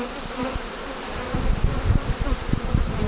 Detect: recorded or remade remade